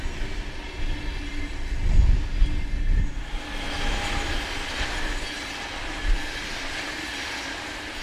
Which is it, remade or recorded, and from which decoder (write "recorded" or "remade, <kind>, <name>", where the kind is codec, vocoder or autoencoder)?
recorded